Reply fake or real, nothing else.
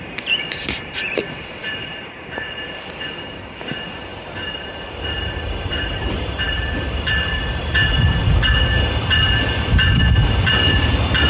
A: fake